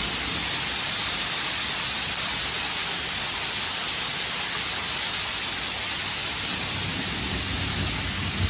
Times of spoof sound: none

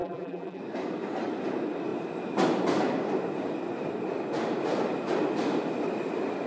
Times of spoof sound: 0.0-0.6